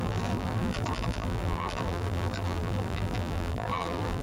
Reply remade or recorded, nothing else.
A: remade